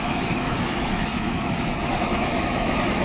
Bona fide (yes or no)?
no